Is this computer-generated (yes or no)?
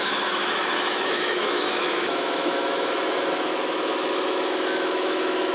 yes